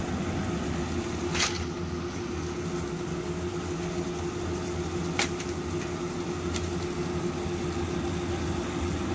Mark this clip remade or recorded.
recorded